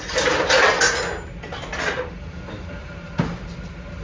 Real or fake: real